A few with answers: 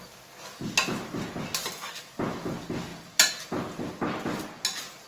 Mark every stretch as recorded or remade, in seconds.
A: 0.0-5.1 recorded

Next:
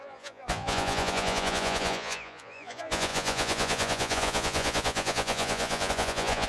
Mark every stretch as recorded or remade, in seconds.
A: 0.0-6.5 remade

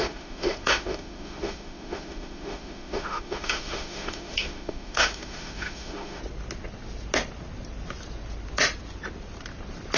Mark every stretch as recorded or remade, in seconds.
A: 0.0-6.2 remade; 6.2-10.0 recorded